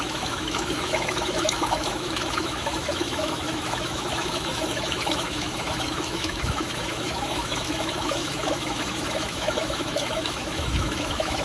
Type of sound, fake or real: fake